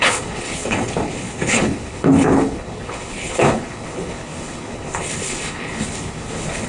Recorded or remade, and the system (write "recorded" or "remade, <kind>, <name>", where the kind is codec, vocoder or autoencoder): remade, codec, HILCodec